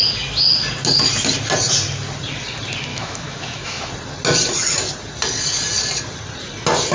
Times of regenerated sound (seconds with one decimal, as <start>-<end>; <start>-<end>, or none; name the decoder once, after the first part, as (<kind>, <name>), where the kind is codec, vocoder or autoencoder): 2.9-3.9 (autoencoder, DAC-VAE)